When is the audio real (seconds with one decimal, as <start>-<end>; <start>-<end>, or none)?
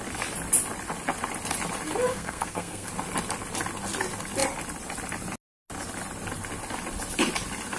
0.0-2.1; 2.9-7.8